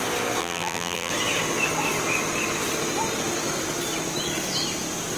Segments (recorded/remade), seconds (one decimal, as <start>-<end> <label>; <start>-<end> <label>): 0.0-0.4 recorded; 0.4-1.1 remade; 1.1-5.2 recorded